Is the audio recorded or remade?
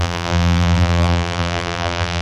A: remade